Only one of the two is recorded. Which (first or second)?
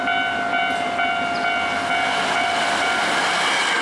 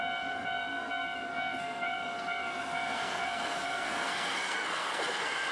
first